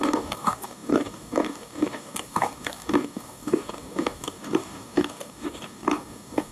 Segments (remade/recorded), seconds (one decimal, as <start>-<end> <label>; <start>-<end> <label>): 0.0-6.5 remade